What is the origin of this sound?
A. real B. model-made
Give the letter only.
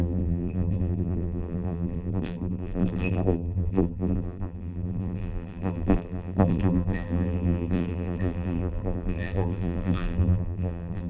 B